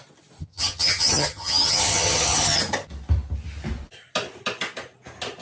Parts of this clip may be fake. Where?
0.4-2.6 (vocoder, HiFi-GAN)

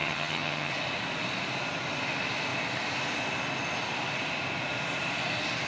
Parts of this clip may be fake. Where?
0.0-0.7 (vocoder, HiFi-GAN)

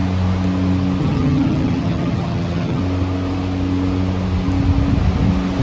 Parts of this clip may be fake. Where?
1.0-2.8 (vocoder, HiFi-GAN)

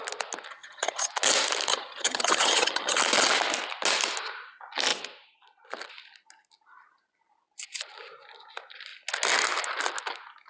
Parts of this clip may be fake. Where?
0.5-1.1 (vocoder, HiFi-GAN); 1.7-3.0